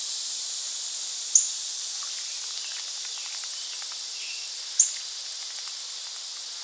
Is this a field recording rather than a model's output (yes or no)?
yes